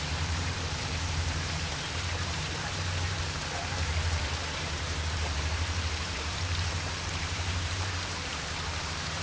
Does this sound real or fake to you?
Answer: fake